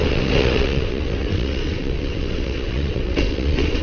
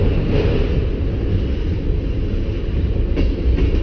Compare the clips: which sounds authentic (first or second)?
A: second